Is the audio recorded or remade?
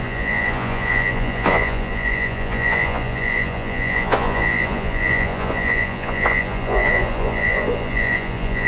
remade